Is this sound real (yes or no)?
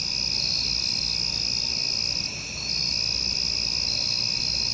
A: yes